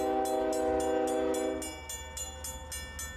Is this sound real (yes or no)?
yes